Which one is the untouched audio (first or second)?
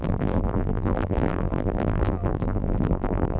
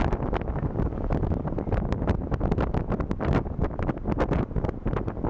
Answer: second